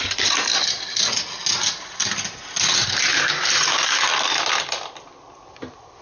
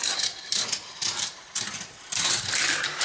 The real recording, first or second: first